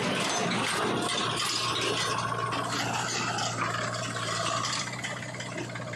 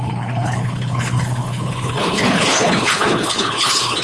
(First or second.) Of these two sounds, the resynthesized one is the second